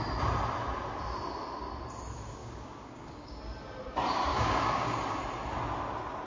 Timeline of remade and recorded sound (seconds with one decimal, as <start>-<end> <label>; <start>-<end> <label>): 0.0-2.4 recorded; 2.4-3.4 remade; 3.4-4.3 recorded; 4.3-5.2 remade; 5.2-6.3 recorded